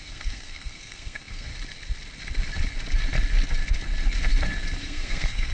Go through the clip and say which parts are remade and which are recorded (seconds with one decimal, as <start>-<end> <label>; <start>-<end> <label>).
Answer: 0.0-1.5 remade; 1.5-4.8 recorded; 4.8-5.5 remade